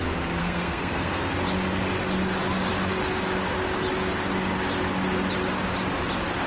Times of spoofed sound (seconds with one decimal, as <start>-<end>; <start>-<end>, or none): 0.4-1.3